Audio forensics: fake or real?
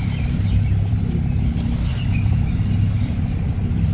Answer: fake